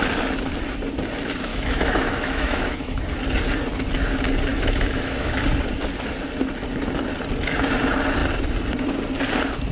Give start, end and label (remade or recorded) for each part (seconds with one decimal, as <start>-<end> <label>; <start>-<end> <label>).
0.0-1.5 recorded; 1.5-3.0 remade; 3.0-4.5 recorded; 4.5-5.4 remade; 5.4-9.7 recorded